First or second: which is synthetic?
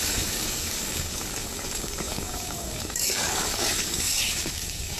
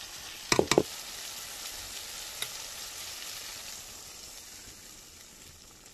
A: first